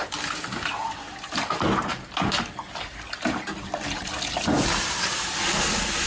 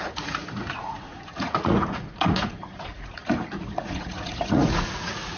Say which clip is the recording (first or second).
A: first